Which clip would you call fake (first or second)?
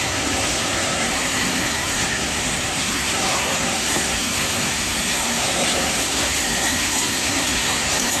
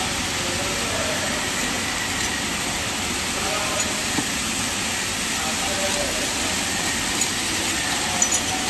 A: first